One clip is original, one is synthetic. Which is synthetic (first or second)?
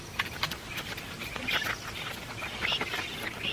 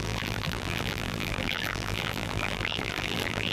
second